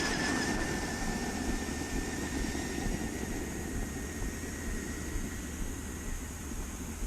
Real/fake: fake